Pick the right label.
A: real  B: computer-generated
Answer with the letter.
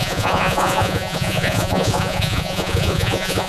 B